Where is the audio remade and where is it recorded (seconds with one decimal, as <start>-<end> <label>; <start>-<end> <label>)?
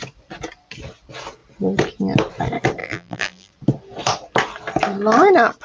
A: 0.0-2.8 recorded; 2.8-3.5 remade; 3.5-5.6 recorded